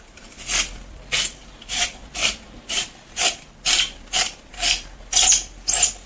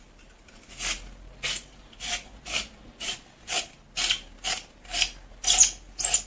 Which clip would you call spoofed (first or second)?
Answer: first